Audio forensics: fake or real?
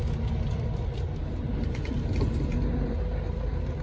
real